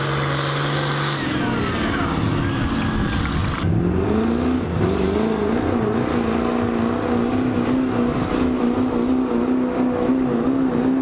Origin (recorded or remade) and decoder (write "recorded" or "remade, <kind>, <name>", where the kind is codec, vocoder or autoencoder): recorded